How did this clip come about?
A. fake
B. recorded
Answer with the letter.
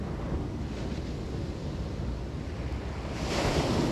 B